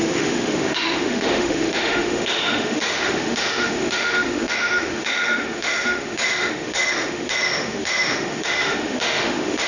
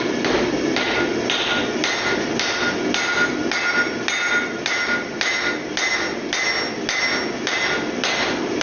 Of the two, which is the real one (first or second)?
second